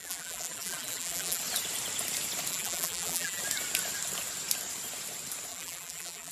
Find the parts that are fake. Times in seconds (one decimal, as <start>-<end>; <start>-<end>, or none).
0.0-1.4; 2.5-3.4; 5.5-6.3